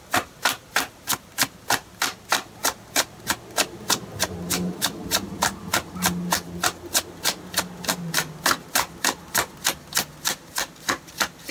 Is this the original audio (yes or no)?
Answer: yes